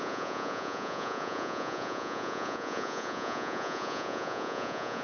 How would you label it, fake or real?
fake